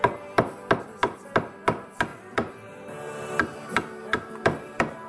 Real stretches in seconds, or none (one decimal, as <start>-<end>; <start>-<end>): 0.0-2.1